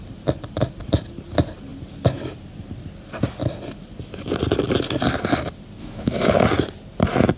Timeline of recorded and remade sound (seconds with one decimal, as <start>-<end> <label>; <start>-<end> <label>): 0.0-5.8 recorded; 5.8-6.3 remade; 6.3-7.4 recorded